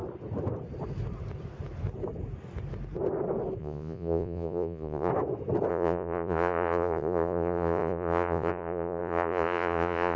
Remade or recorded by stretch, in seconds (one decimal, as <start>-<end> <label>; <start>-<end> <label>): 0.0-3.6 recorded; 3.6-5.1 remade; 5.1-5.7 recorded; 5.7-10.2 remade